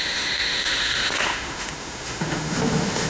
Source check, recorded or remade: remade